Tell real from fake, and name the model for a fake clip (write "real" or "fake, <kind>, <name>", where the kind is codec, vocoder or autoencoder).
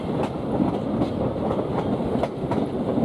real